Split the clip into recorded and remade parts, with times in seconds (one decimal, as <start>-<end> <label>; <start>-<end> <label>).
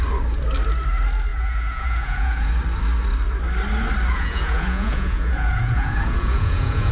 0.0-1.3 recorded; 1.3-2.5 remade; 2.5-4.1 recorded; 4.1-6.9 remade